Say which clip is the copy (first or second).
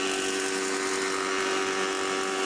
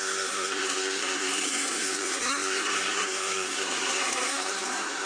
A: second